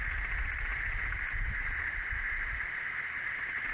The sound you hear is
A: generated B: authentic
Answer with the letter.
B